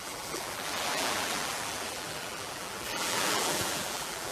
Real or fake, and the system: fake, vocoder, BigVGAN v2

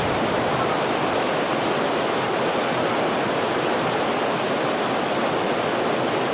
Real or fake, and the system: real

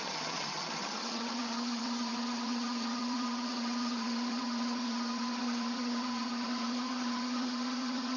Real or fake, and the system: fake, vocoder, HiFi-GAN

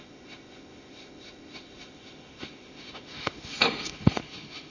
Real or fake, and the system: fake, autoencoder, DAC-VAE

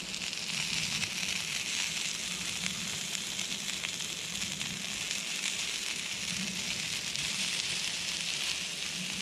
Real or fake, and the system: real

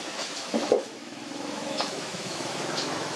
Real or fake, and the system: fake, autoencoder, DAC-VAE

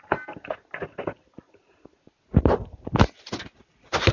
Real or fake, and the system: real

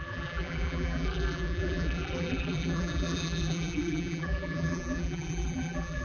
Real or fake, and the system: fake, vocoder, BigVGAN v2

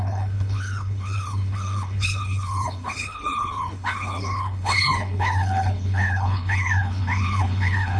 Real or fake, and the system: fake, codec, HILCodec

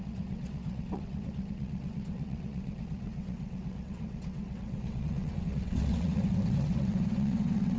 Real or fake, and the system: fake, vocoder, WaveNeXt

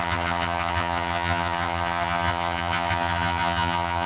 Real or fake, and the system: fake, vocoder, HiFi-GAN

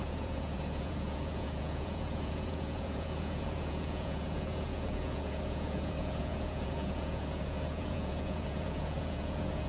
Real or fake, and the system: fake, vocoder, Vocos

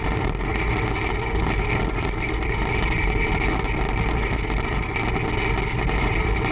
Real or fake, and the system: real